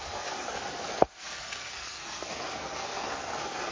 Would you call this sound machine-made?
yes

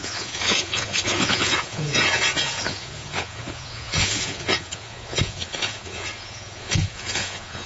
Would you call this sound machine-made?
yes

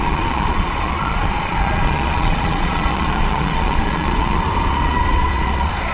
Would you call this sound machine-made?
yes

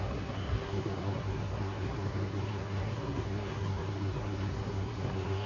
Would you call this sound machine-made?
yes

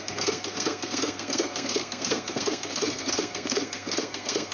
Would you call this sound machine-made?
yes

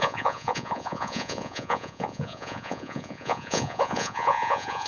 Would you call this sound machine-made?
yes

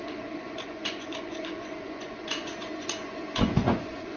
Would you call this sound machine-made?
yes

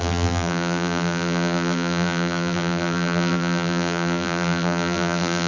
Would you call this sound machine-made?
yes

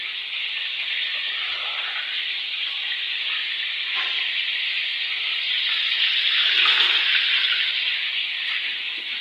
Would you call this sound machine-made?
no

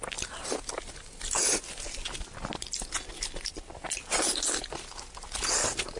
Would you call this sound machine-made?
no